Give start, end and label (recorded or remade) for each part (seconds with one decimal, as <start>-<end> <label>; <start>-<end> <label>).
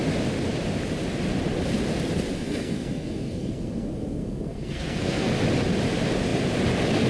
0.0-2.3 recorded; 2.3-5.3 remade; 5.3-7.1 recorded